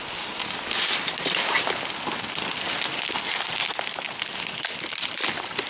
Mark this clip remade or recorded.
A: recorded